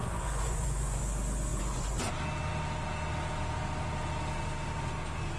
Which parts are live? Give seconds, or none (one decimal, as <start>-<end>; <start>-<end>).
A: 1.0-1.5; 2.0-5.4